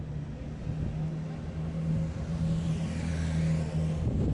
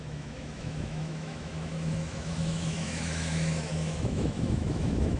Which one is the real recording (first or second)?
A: first